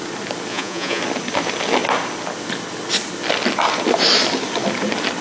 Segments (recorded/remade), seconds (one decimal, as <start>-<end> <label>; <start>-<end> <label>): 0.0-0.5 recorded; 0.5-1.0 remade; 1.0-5.2 recorded